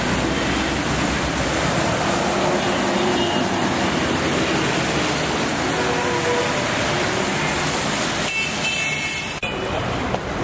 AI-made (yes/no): no